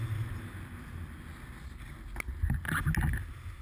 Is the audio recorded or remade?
recorded